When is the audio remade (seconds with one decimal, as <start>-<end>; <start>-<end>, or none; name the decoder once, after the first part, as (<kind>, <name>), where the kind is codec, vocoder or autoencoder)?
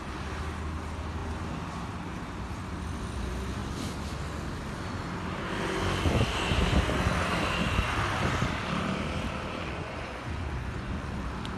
9.6-11.2 (vocoder, Vocos)